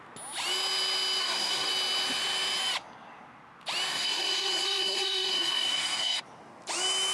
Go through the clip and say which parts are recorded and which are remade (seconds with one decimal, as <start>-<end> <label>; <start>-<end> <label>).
0.0-1.2 recorded; 1.2-1.7 remade; 1.7-3.9 recorded; 3.9-6.2 remade; 6.2-7.1 recorded